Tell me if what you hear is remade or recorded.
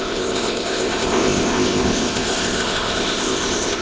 remade